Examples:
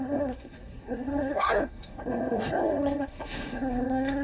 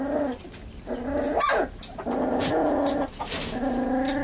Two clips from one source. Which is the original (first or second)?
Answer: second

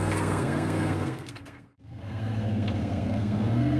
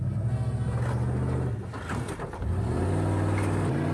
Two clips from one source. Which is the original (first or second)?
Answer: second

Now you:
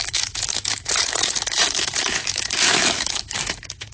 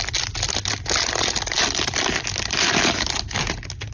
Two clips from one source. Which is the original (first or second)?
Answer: second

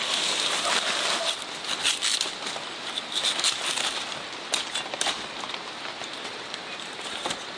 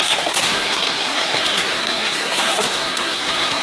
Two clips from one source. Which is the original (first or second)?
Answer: first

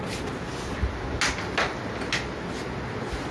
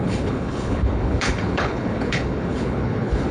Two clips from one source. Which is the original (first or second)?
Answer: first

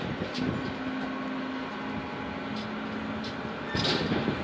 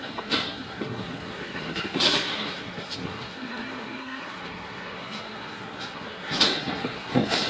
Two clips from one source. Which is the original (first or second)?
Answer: first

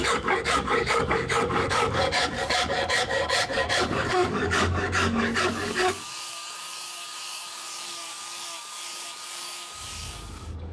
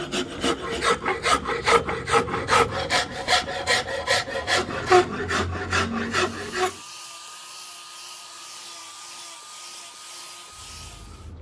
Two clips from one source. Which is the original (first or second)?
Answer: second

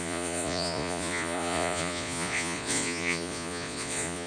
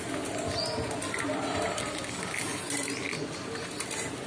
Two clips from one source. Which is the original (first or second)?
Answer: second